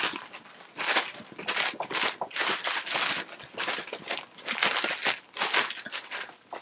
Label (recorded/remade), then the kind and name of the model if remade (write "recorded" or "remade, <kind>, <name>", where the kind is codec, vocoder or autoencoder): recorded